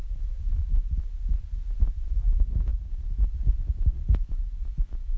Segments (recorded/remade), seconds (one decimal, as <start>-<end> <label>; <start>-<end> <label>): 0.0-5.2 recorded